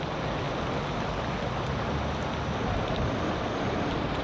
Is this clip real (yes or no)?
yes